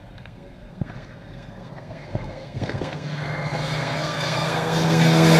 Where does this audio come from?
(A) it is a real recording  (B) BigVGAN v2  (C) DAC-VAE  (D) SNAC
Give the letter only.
D